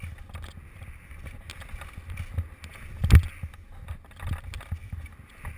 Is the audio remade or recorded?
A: recorded